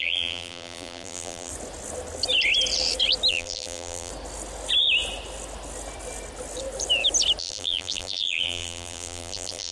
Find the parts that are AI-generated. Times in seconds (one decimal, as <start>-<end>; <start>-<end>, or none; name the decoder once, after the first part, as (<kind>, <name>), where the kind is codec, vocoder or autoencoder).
0.0-1.5 (vocoder, BigVGAN v2); 3.3-4.1; 7.4-9.7